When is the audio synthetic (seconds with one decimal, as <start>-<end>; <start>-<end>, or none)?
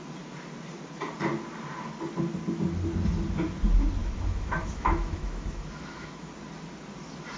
4.0-6.3